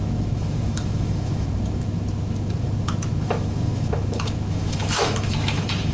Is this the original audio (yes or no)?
no